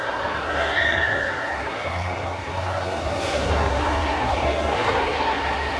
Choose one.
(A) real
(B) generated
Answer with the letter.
B